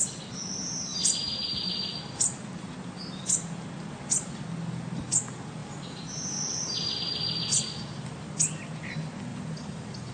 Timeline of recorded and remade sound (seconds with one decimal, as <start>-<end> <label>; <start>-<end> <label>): 0.0-0.9 recorded; 0.9-2.0 remade; 2.0-5.6 recorded; 5.6-7.0 remade; 7.0-9.3 recorded; 9.3-10.1 remade